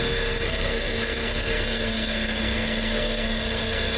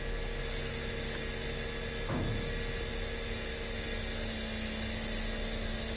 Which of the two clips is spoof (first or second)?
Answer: first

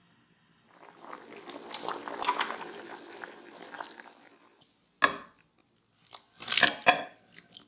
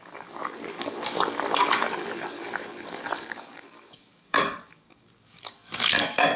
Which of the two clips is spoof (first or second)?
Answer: second